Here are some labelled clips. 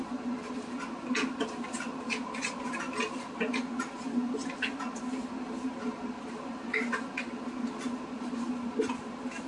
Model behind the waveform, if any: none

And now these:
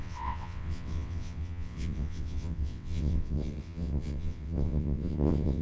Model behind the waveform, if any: vocoder, WaveNeXt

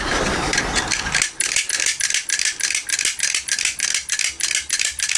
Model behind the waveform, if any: none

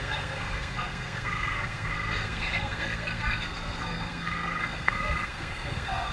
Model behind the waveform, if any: codec, SNAC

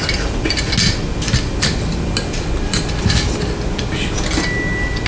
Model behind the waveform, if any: none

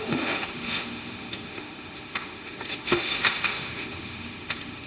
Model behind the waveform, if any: autoencoder, DAC-VAE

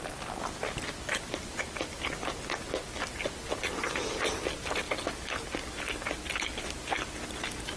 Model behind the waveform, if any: none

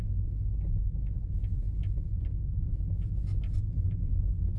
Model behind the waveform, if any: none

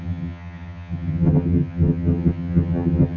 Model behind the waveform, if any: vocoder, HiFi-GAN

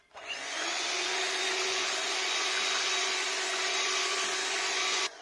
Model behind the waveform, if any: vocoder, Vocos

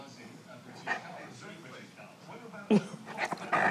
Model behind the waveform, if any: vocoder, BigVGAN v2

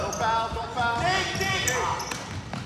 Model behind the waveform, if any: none